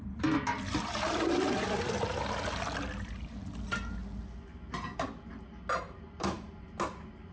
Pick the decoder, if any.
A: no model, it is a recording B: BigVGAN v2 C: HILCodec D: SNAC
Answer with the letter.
A